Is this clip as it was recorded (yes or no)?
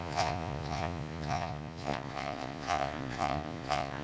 no